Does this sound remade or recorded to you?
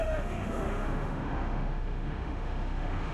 remade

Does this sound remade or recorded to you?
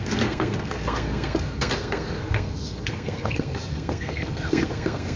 remade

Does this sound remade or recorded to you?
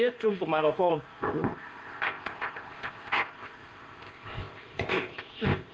remade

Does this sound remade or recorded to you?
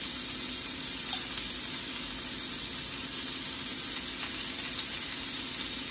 recorded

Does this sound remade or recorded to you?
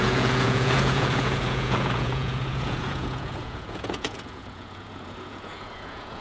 remade